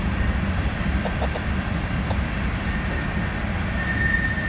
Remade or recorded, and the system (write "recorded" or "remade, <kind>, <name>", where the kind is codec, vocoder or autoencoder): recorded